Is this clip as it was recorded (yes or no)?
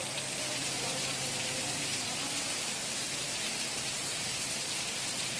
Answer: no